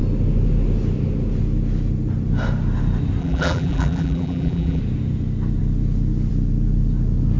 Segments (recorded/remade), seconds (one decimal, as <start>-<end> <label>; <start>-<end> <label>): 0.0-3.2 recorded; 3.2-4.8 remade; 4.8-7.4 recorded